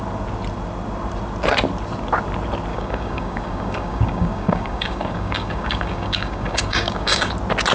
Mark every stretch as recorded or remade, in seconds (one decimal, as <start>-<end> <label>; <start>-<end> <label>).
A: 0.0-2.7 recorded; 2.7-7.3 remade; 7.3-7.7 recorded